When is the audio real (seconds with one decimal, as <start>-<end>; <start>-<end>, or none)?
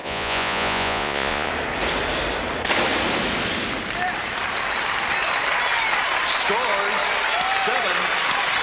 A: 1.5-8.6